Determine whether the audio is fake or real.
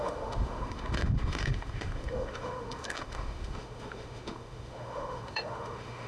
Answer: fake